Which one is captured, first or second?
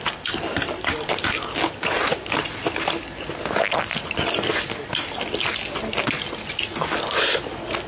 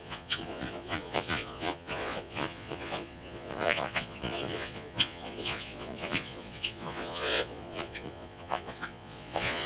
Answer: first